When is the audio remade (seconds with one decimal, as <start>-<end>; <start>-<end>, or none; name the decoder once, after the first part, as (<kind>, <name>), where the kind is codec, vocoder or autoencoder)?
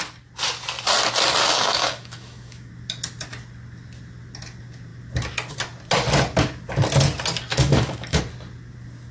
1.4-2.7 (autoencoder, DAC-VAE); 7.5-8.2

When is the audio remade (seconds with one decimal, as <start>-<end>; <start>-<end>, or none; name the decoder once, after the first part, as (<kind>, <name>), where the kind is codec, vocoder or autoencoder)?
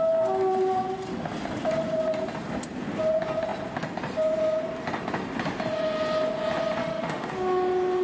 6.8-7.3 (autoencoder, DAC-VAE)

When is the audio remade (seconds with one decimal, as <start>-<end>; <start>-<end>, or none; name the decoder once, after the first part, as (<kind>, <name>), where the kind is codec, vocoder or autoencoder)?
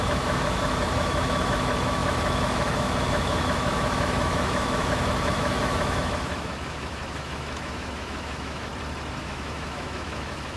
0.0-8.7 (autoencoder, DAC-VAE); 9.2-10.6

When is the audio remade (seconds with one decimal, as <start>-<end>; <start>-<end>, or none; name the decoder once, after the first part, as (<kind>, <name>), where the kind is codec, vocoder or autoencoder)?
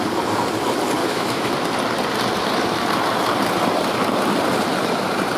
1.0-1.5 (autoencoder, DAC-VAE)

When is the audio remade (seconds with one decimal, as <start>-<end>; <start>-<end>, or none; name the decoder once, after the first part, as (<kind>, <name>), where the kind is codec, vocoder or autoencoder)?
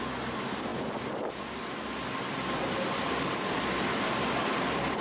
none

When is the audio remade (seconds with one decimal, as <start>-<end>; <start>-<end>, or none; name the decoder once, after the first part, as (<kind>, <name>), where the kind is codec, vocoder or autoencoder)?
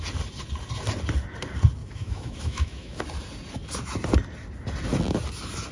1.8-3.0 (autoencoder, DAC-VAE)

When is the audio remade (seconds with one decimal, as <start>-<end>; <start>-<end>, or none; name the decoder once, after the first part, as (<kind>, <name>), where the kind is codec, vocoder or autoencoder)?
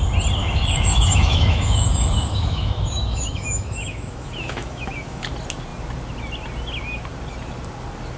0.4-5.3 (autoencoder, DAC-VAE)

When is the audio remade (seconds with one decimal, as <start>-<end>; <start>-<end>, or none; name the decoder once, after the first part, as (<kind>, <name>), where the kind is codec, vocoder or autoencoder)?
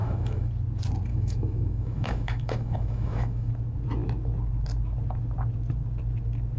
0.0-0.5 (autoencoder, DAC-VAE); 1.1-3.5